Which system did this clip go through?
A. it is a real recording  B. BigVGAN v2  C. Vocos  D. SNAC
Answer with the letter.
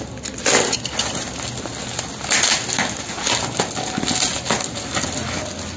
A